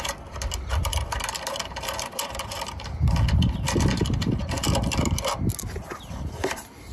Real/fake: real